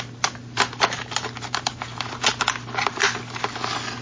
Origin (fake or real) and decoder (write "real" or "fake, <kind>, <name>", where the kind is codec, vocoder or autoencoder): real